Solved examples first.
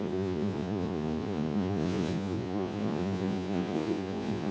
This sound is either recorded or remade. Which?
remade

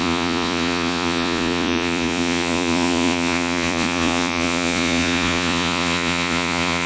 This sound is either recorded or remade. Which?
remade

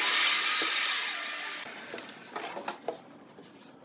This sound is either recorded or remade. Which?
recorded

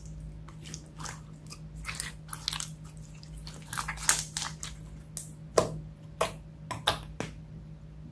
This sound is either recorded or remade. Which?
recorded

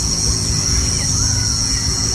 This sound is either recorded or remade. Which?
remade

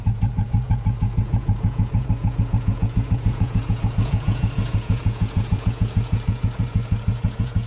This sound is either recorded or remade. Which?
remade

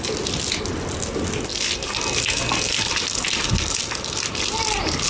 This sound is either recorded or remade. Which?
recorded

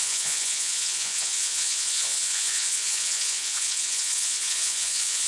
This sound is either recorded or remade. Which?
remade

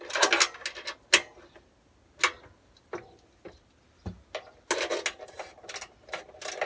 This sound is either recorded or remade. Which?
recorded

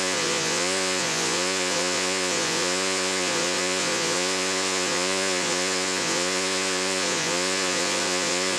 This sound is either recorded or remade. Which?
remade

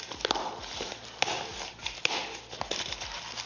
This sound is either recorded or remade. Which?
recorded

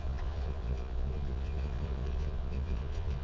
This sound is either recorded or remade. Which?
remade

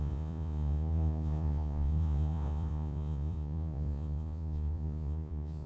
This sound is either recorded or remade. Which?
remade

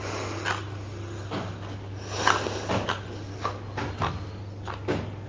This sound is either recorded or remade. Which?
recorded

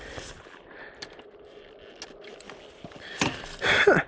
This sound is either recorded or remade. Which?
recorded